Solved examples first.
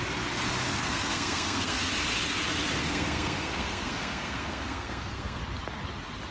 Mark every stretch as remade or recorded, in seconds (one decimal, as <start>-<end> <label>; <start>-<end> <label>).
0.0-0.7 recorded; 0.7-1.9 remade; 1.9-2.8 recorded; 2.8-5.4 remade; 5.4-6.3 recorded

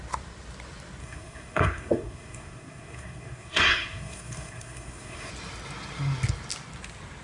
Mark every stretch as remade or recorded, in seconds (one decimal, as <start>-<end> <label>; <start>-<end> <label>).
0.0-1.0 recorded; 1.0-5.3 remade; 5.3-7.2 recorded

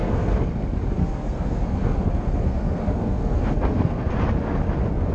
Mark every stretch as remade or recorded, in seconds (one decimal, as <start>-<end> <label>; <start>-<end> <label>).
0.0-0.5 remade; 0.5-1.0 recorded; 1.0-4.1 remade; 4.1-5.1 recorded